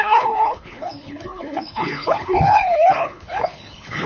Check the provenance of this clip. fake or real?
fake